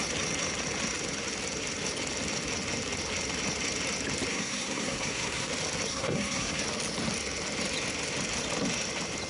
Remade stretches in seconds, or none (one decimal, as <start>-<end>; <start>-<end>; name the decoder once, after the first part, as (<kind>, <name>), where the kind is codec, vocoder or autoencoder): 4.3-5.5 (codec, SNAC); 5.9-6.6